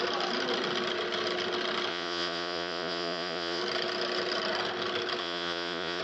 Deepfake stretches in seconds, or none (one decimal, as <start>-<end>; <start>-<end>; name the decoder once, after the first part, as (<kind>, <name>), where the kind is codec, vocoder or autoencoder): 1.9-3.6 (vocoder, Vocos); 5.2-6.0